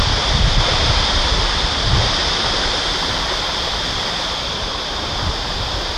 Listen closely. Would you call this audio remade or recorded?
recorded